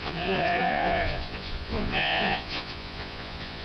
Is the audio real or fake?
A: fake